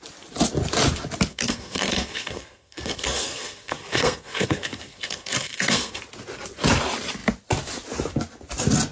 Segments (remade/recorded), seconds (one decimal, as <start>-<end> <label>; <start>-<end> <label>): 0.0-1.3 recorded; 1.3-6.0 remade; 6.0-8.9 recorded